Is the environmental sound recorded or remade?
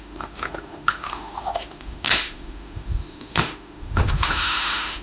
remade